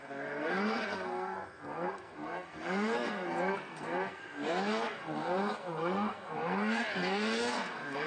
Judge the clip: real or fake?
fake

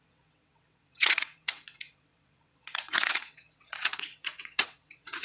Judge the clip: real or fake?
fake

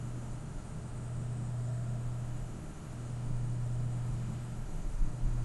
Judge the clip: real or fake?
fake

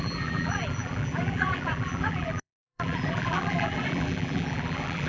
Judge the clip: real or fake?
fake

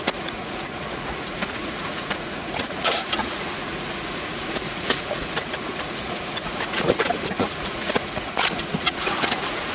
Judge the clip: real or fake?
fake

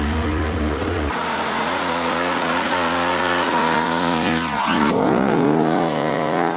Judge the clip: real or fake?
fake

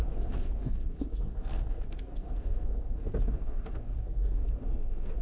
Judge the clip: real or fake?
fake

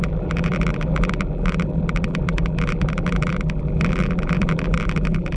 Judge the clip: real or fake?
fake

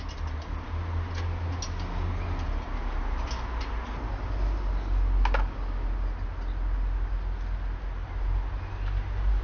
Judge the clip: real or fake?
real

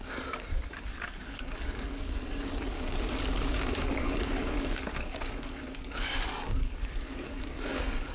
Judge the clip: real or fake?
fake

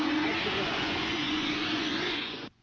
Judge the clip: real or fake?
fake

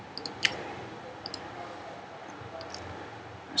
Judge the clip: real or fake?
real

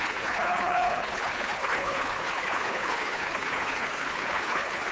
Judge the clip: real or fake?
fake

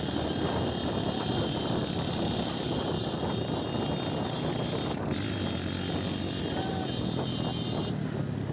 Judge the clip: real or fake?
real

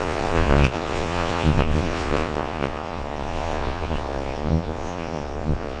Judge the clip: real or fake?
fake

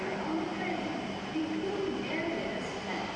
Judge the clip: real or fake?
real